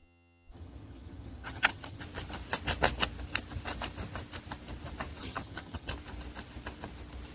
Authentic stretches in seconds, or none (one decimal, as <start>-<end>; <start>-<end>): 2.0-5.2; 5.9-7.3